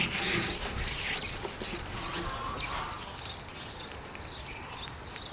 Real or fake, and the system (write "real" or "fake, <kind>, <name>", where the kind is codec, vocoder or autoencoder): real